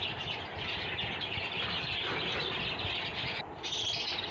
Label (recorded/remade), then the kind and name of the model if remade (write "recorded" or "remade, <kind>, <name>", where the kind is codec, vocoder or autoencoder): recorded